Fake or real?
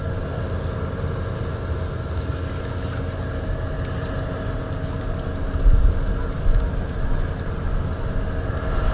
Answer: real